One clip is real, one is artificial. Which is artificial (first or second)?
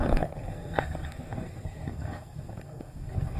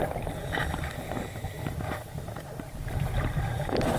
first